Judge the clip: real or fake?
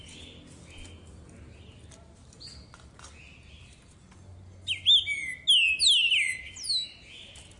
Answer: real